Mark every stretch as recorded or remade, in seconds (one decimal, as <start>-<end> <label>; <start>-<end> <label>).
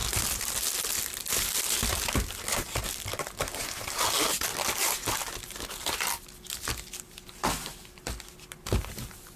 0.0-4.4 remade; 4.4-9.4 recorded